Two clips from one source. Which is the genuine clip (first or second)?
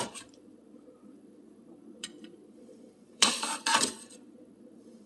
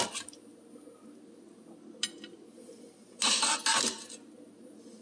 second